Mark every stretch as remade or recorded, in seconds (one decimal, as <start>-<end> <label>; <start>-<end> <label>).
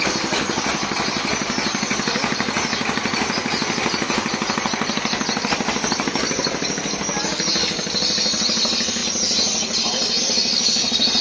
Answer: 0.0-11.2 recorded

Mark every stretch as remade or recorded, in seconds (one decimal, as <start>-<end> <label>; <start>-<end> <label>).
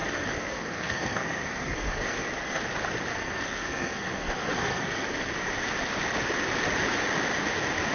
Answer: 0.0-2.6 remade; 2.6-3.1 recorded; 3.1-5.3 remade; 5.3-7.9 recorded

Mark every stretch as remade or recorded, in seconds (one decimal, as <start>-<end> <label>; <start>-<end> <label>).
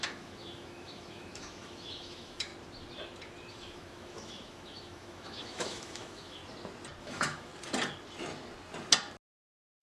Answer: 0.0-2.5 remade; 2.5-3.5 recorded; 3.5-6.4 remade; 6.4-7.0 recorded; 7.0-7.5 remade; 7.5-9.8 recorded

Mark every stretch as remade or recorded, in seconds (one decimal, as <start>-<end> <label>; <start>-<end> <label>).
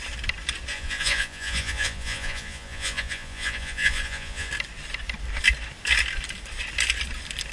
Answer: 0.0-0.7 recorded; 0.7-4.5 remade; 4.5-7.5 recorded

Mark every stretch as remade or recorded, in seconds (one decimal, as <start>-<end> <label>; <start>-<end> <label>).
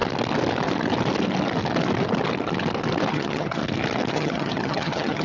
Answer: 0.0-3.1 recorded; 3.1-3.6 remade; 3.6-4.1 recorded; 4.1-5.2 remade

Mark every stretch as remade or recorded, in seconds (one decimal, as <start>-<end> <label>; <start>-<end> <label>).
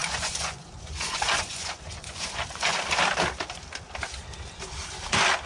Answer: 0.0-2.8 remade; 2.8-5.5 recorded